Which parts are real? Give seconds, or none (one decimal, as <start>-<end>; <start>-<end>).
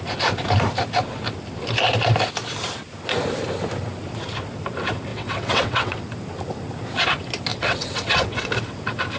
0.0-5.1; 6.0-7.5; 8.5-9.2